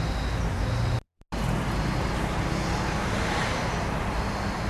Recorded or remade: recorded